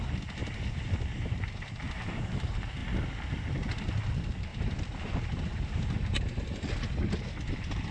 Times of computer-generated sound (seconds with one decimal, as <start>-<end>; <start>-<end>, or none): 4.5-6.4